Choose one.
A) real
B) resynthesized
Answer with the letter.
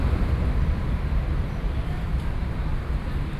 A